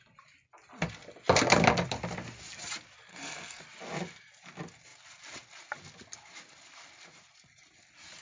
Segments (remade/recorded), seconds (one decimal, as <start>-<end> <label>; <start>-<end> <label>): 0.0-3.1 recorded; 3.1-3.6 remade; 3.6-8.2 recorded